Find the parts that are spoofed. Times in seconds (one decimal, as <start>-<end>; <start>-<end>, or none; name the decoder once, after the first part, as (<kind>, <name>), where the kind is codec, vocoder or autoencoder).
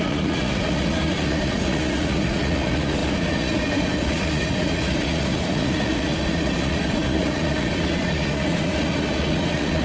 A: 0.0-9.8 (vocoder, Vocos)